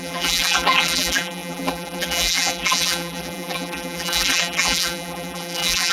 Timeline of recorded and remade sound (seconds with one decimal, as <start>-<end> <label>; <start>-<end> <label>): 0.0-5.9 remade